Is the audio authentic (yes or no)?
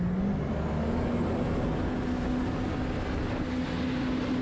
yes